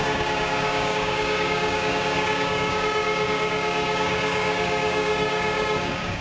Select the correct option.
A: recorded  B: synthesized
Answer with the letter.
B